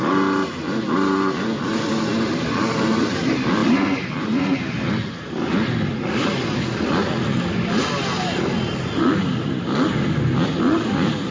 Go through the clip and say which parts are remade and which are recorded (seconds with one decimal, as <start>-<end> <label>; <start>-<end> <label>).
0.0-3.6 recorded; 3.6-4.4 remade; 4.4-11.3 recorded